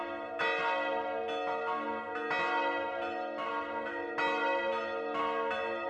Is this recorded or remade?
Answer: recorded